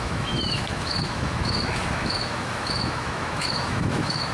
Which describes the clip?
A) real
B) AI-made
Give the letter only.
B